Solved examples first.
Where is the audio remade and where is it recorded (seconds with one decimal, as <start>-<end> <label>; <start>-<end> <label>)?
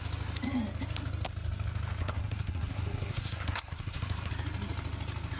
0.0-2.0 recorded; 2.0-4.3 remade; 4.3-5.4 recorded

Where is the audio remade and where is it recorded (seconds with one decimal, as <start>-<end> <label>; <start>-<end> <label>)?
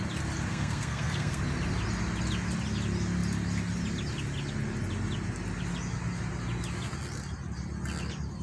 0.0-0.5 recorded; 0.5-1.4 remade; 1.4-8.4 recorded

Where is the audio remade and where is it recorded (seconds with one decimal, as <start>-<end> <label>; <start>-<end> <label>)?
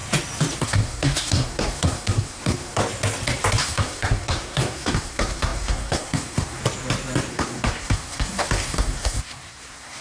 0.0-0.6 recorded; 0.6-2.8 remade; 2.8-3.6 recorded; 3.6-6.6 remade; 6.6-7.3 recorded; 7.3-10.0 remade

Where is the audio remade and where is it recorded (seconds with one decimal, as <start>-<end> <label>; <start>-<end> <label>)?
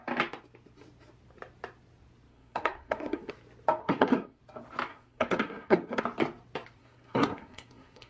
0.0-2.3 recorded; 2.3-3.3 remade; 3.3-3.8 recorded; 3.8-4.4 remade; 4.4-4.9 recorded; 4.9-6.0 remade; 6.0-6.8 recorded; 6.8-8.1 remade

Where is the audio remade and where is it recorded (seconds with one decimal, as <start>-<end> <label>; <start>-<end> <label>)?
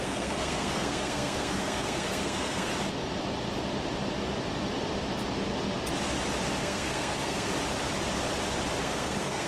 0.0-2.7 remade; 2.7-6.6 recorded; 6.6-7.5 remade; 7.5-8.8 recorded; 8.8-9.5 remade